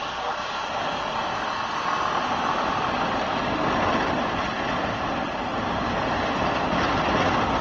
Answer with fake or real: real